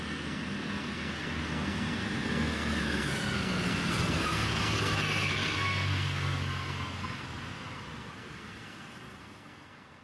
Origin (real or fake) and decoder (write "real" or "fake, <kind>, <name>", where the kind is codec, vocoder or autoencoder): fake, codec, SNAC